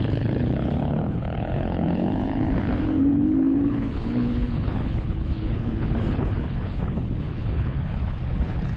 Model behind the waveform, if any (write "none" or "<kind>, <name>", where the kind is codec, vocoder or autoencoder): codec, HILCodec